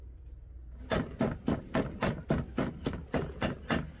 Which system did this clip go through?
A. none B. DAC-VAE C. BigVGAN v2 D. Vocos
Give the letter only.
A